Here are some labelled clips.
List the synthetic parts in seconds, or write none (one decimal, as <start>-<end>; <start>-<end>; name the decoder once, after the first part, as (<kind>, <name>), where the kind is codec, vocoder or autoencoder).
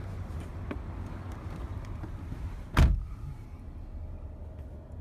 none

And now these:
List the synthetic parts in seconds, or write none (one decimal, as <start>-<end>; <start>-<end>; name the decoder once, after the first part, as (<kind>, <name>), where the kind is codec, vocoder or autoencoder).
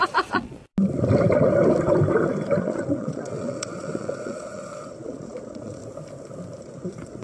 0.0-0.6 (vocoder, Vocos); 2.6-5.8; 6.6-7.2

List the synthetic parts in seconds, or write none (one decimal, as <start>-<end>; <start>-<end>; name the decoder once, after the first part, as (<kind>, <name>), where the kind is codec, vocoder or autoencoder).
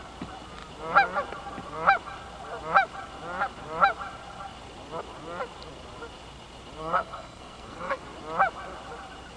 6.8-8.0 (codec, SNAC)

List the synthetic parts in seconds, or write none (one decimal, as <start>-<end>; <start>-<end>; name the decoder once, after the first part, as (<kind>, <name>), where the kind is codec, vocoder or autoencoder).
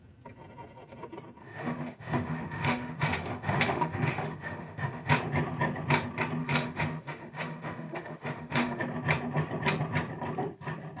1.4-5.1 (autoencoder, DAC-VAE); 6.4-8.8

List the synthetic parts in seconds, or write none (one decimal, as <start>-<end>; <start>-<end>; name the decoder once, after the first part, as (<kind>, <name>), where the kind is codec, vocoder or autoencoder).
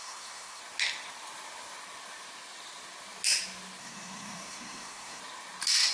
0.0-0.6 (codec, SNAC); 3.8-5.2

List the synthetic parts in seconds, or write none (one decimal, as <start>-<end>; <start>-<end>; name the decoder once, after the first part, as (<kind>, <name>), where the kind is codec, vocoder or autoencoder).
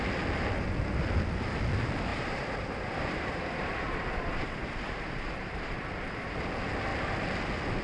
2.1-6.4 (vocoder, BigVGAN v2)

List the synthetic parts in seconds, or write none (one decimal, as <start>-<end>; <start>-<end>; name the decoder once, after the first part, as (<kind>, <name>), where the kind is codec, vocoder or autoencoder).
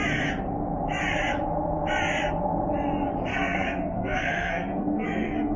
3.3-5.6 (codec, SNAC)